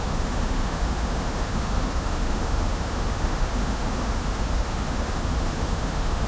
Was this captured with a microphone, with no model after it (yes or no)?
no